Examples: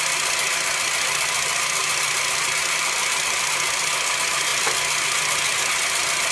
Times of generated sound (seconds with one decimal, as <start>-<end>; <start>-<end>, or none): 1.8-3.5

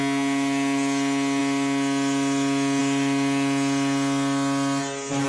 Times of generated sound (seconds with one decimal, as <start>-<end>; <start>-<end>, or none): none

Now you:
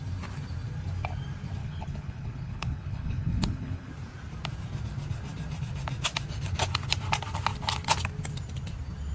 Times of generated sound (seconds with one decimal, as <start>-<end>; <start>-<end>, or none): 1.6-3.9

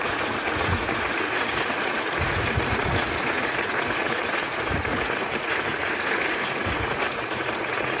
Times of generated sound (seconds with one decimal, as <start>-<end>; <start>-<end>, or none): 0.0-8.0